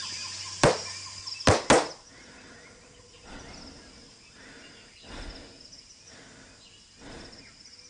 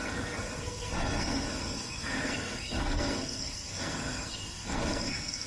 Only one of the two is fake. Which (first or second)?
second